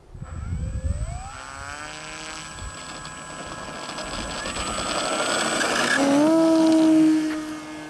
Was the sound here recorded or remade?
recorded